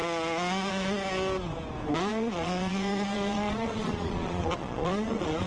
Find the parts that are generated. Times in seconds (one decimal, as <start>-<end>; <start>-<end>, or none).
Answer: 2.1-5.5